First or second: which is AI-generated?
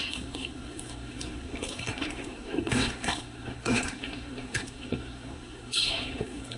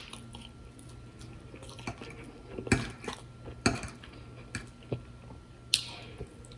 first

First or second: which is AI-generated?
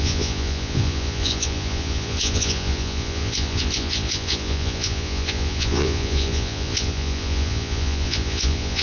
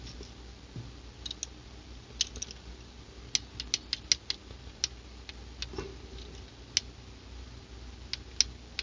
first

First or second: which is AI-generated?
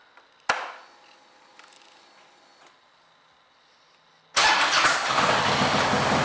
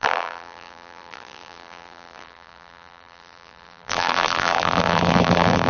second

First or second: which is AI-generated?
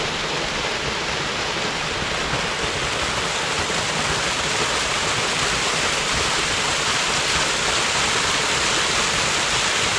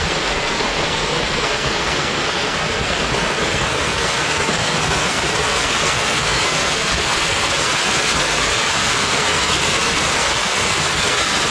second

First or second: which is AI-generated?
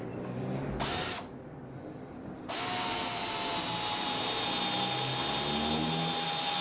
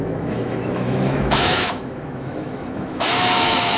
second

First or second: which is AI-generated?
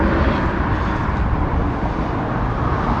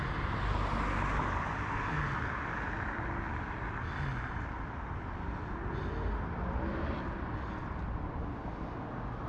first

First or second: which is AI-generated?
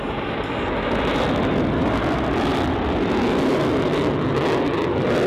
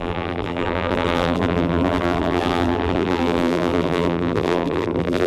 second